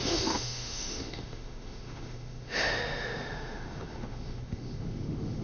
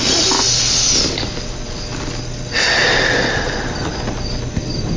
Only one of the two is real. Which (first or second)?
second